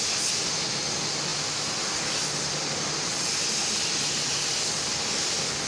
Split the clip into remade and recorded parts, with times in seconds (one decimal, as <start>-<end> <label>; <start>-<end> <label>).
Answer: 0.0-5.7 recorded